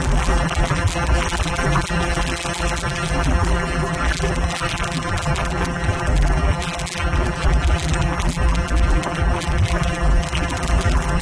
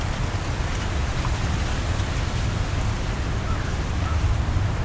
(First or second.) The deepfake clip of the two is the first